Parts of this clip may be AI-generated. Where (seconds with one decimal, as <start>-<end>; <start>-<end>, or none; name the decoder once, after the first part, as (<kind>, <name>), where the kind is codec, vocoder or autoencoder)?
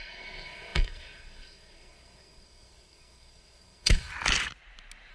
0.0-4.1 (codec, SNAC)